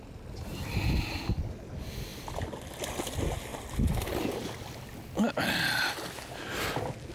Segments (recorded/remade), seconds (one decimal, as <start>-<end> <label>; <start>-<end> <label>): 0.0-7.1 recorded